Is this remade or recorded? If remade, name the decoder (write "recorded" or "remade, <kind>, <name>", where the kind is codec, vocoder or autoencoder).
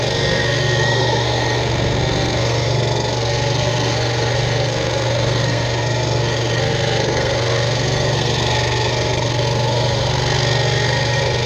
remade, codec, SNAC